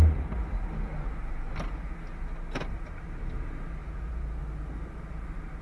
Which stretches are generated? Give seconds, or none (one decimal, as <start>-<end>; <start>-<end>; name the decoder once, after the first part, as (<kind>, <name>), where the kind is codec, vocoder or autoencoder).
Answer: 3.8-4.4 (vocoder, Vocos)